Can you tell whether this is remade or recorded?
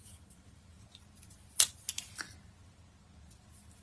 recorded